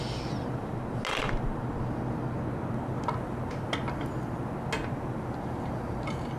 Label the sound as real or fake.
real